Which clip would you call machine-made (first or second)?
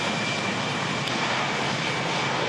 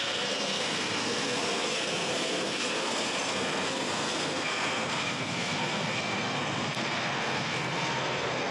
second